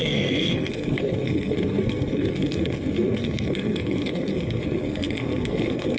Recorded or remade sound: remade